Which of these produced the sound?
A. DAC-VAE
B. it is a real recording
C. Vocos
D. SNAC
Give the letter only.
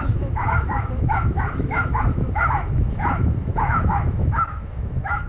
A